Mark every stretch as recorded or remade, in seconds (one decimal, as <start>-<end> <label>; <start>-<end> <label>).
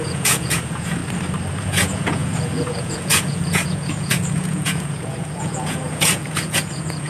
0.0-1.0 remade; 1.0-1.5 recorded; 1.5-7.1 remade